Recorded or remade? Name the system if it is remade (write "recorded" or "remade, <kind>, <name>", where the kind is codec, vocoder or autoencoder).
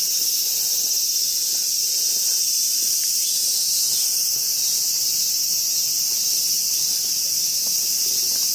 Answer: recorded